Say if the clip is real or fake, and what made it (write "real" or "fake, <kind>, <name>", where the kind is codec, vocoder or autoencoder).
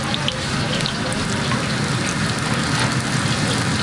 real